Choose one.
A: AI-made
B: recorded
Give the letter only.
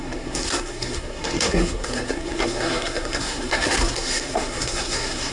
A